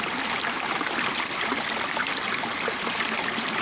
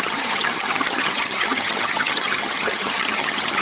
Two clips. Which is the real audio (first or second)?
first